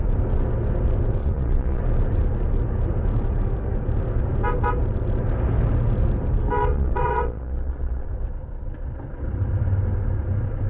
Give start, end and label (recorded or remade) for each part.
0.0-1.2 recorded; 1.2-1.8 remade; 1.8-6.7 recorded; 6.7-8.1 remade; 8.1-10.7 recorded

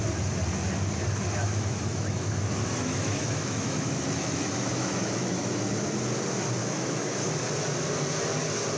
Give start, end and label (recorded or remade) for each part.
0.0-1.4 recorded; 1.4-5.5 remade; 5.5-6.6 recorded; 6.6-7.2 remade; 7.2-8.8 recorded

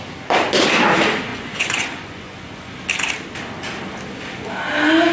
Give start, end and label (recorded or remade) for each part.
0.0-1.3 recorded; 1.3-2.7 remade; 2.7-5.1 recorded

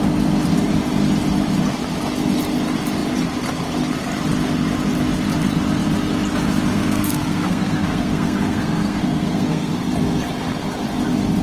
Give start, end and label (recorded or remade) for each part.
0.0-6.7 recorded; 6.7-9.8 remade; 9.8-11.4 recorded

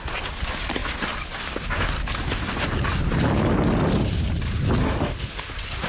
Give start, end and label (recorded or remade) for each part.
0.0-4.8 recorded; 4.8-5.5 remade; 5.5-5.9 recorded